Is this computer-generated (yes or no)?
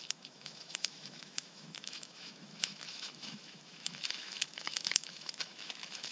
yes